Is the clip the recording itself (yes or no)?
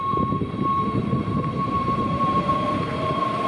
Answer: no